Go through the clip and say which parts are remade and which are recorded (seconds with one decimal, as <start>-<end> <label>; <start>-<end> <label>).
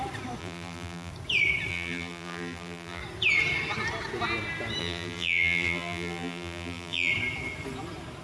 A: 0.0-0.4 recorded; 0.4-1.1 remade; 1.1-1.7 recorded; 1.7-3.0 remade; 3.0-4.8 recorded; 4.8-7.1 remade; 7.1-8.2 recorded